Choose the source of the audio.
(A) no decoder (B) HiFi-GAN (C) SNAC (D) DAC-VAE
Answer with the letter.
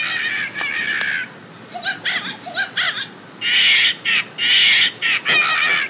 A